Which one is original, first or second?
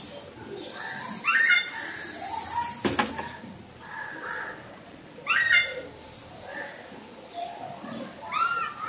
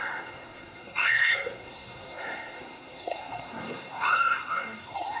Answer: first